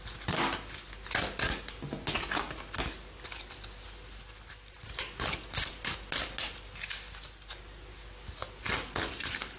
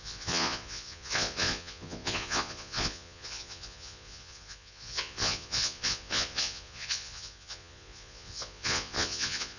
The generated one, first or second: second